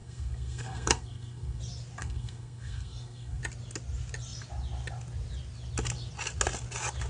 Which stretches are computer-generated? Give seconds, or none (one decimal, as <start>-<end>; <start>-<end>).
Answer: 0.0-1.6; 2.0-3.4